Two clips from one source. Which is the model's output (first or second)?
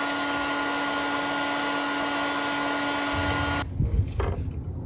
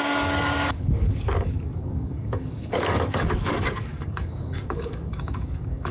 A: second